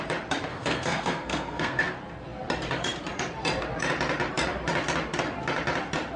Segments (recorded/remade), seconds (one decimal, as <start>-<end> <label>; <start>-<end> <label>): 0.0-0.5 recorded; 0.5-1.8 remade; 1.8-6.2 recorded